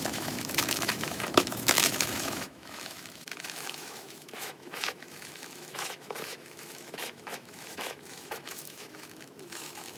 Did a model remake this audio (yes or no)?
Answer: yes